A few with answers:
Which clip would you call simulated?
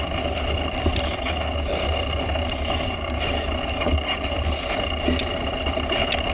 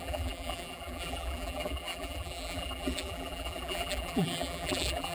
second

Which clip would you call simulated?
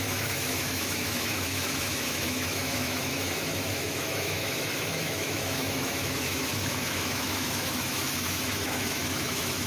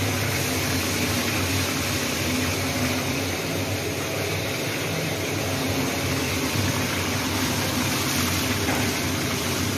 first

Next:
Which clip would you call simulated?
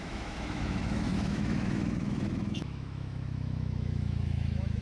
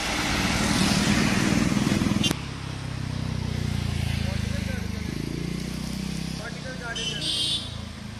first